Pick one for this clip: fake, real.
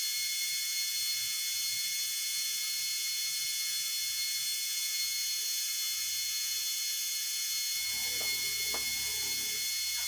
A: fake